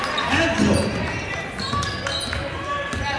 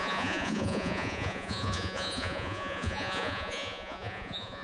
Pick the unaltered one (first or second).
first